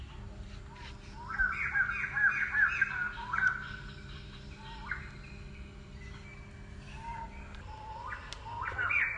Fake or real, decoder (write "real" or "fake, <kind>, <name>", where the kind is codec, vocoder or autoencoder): real